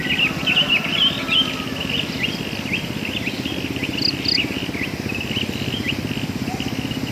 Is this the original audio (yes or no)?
yes